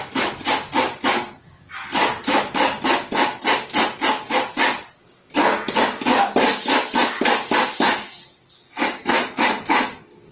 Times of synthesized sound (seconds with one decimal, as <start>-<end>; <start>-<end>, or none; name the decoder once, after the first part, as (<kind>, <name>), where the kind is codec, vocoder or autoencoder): none